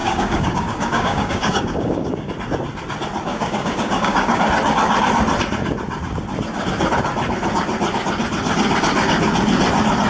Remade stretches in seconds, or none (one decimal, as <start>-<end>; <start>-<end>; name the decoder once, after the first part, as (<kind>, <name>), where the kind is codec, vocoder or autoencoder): 0.0-2.3 (codec, DAC); 3.3-4.4